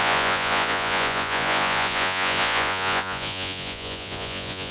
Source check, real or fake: fake